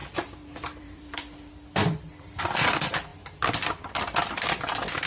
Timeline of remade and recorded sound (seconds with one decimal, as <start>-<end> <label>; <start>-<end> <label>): 0.0-2.4 remade; 2.4-5.1 recorded